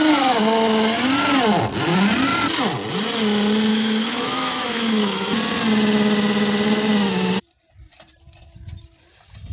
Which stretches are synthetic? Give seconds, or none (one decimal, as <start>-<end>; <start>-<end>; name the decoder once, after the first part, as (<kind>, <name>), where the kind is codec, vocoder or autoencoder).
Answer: 3.7-5.3 (autoencoder, DAC-VAE)